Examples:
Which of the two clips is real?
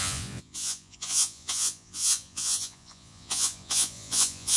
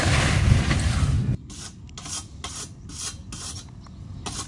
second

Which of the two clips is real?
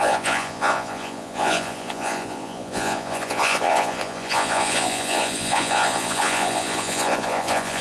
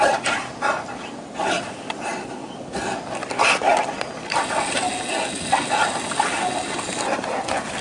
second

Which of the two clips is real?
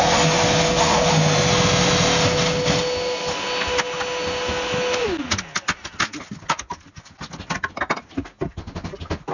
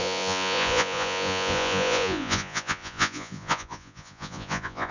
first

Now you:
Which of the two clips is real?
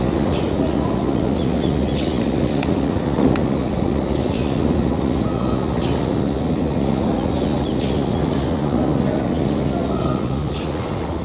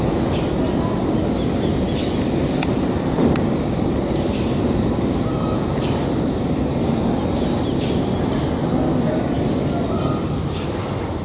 second